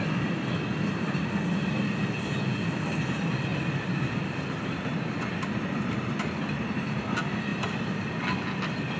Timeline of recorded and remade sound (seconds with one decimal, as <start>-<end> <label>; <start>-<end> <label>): 0.0-9.0 recorded